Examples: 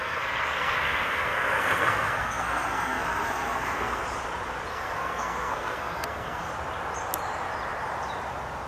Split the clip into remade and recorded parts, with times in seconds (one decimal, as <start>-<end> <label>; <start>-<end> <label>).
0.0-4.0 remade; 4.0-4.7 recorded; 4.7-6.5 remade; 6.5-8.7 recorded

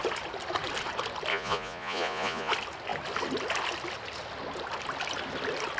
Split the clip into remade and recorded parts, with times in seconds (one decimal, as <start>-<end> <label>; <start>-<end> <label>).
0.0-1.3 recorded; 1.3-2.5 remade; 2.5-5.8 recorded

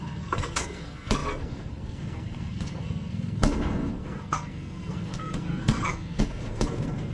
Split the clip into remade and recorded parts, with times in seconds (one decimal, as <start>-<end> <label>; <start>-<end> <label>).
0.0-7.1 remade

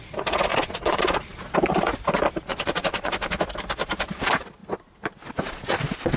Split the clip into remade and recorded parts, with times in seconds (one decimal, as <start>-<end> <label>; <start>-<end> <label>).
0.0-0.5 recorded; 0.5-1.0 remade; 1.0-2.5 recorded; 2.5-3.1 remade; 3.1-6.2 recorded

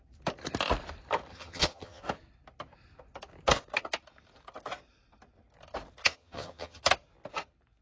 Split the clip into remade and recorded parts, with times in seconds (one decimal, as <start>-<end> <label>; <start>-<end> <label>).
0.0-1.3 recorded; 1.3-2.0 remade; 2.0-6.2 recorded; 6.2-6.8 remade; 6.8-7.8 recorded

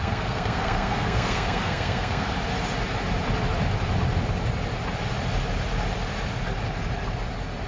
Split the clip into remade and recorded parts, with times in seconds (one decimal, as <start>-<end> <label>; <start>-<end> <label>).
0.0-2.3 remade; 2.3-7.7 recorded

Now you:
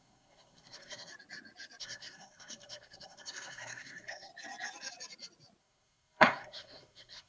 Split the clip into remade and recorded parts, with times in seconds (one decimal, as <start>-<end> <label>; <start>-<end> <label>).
0.0-1.1 remade; 1.1-1.8 recorded; 1.8-4.3 remade; 4.3-5.6 recorded; 5.6-7.3 remade